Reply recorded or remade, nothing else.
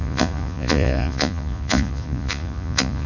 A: remade